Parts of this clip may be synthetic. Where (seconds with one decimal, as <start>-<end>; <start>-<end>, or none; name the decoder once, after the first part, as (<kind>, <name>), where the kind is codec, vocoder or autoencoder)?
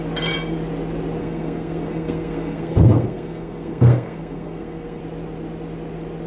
1.2-5.0 (codec, SNAC)